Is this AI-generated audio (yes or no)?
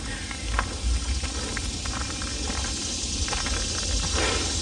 no